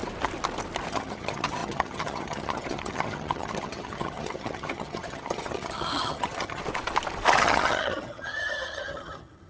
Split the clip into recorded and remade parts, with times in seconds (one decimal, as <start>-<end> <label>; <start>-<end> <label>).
0.0-0.9 recorded; 0.9-6.6 remade; 6.6-7.4 recorded; 7.4-9.5 remade